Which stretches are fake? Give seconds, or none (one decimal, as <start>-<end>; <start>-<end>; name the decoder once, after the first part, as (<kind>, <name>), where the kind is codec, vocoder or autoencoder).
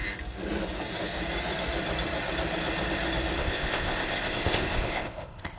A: 3.4-5.6 (codec, ZipCodec)